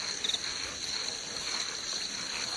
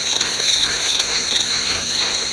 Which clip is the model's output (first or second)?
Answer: second